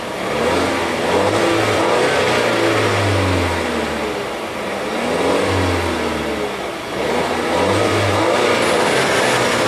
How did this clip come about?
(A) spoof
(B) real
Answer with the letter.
B